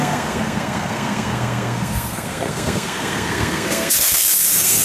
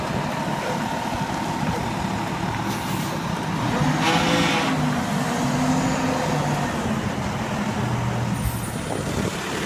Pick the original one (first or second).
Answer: second